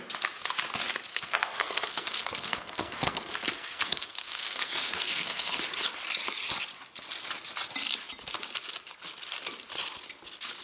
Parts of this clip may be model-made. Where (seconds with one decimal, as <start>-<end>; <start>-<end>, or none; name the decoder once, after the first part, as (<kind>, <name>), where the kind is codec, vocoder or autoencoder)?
1.1-5.6 (codec, SNAC)